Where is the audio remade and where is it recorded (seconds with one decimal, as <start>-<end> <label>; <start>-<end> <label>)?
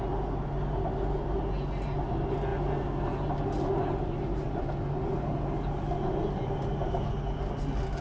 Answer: 0.0-8.0 recorded